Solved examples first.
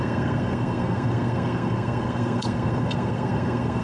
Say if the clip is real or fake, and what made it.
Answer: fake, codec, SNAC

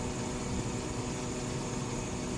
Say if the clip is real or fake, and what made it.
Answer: real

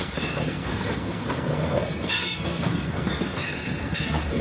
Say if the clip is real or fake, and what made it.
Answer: fake, codec, SNAC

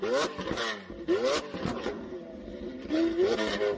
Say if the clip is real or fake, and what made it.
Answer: real